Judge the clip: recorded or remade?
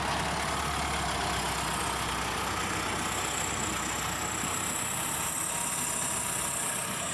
recorded